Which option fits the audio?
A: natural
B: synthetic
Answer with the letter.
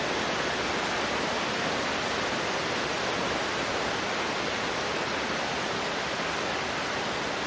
A